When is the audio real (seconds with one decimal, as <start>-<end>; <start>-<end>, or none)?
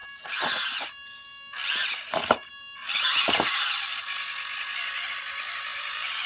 0.0-5.7